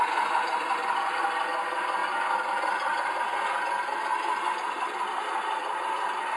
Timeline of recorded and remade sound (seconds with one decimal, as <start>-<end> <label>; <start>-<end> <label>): 0.0-6.4 recorded